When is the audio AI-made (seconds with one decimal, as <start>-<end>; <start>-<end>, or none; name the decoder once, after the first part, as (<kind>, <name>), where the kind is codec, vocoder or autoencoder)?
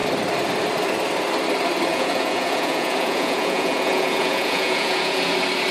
1.9-5.3 (vocoder, Vocos)